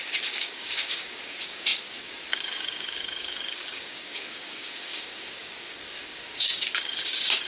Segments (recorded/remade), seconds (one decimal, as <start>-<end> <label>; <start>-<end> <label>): 0.0-7.5 remade